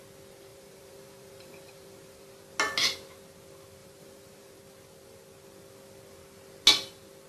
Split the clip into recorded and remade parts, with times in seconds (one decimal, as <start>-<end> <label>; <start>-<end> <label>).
0.0-0.5 recorded; 0.5-2.3 remade; 2.3-3.8 recorded; 3.8-4.6 remade; 4.6-7.3 recorded